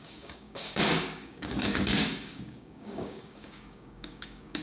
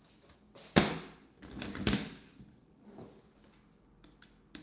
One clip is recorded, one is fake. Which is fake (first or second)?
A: first